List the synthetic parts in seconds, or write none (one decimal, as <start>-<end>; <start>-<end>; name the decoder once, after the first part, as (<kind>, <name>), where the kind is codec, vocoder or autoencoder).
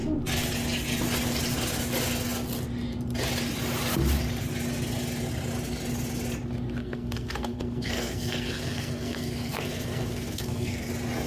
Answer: 6.8-10.9 (codec, SNAC)